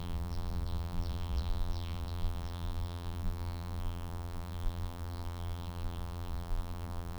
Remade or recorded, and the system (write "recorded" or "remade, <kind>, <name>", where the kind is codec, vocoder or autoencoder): remade, vocoder, BigVGAN v2